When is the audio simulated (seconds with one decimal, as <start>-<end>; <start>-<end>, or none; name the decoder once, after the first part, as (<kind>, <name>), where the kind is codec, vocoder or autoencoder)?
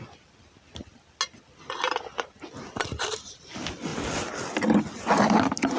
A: none